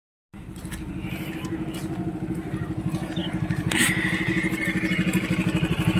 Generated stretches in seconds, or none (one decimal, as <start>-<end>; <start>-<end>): 3.2-3.7